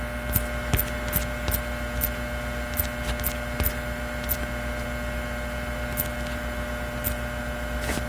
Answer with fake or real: real